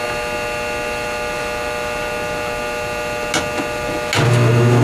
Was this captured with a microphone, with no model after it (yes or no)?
yes